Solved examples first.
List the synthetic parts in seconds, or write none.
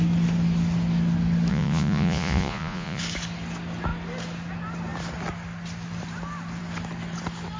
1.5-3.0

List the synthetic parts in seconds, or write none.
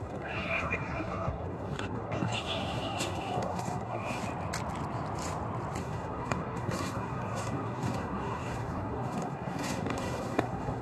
0.0-4.2; 5.8-10.8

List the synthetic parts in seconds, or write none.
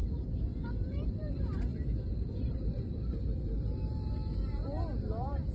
0.0-5.5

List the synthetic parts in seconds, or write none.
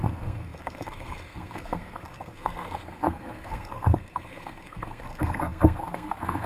0.0-6.5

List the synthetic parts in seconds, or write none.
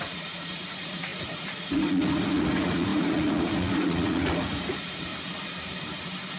0.0-5.1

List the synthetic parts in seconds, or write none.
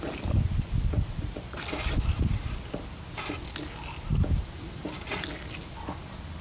none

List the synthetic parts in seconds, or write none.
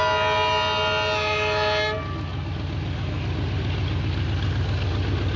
none